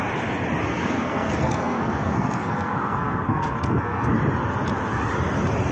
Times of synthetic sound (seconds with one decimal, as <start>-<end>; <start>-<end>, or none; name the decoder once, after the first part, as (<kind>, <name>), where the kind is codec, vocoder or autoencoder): 0.7-4.1 (codec, SNAC)